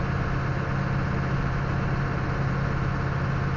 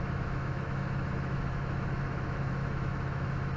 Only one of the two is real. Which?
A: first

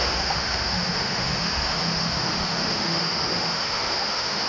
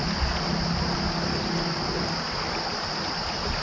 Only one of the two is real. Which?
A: second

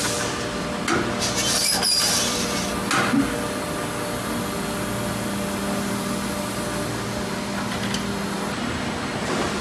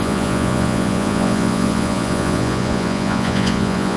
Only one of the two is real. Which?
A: first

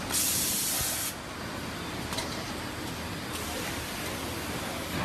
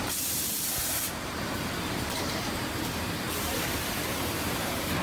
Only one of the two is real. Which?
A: first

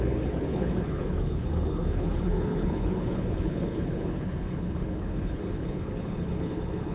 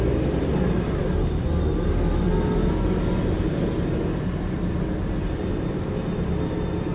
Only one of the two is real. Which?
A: second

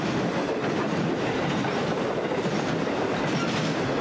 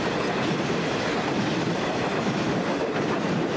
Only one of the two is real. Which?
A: first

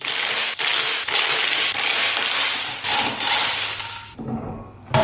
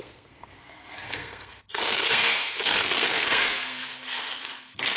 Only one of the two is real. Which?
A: first